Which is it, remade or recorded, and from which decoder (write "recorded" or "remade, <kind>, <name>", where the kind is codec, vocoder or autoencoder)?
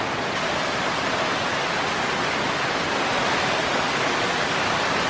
recorded